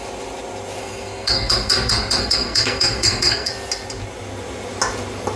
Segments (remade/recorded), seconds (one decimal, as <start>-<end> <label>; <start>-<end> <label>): 0.0-0.8 recorded; 0.8-3.5 remade; 3.5-5.4 recorded